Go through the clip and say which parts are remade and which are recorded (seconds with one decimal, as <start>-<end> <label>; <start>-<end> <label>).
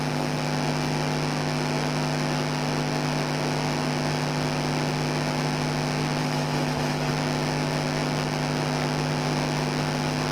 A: 0.0-6.2 recorded; 6.2-7.1 remade; 7.1-10.3 recorded